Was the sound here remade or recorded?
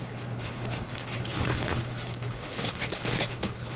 remade